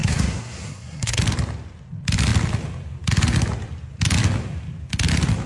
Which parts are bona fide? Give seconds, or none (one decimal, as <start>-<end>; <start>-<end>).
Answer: 1.2-5.5